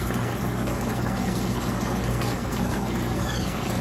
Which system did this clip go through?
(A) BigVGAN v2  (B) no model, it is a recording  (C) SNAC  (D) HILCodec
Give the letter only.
C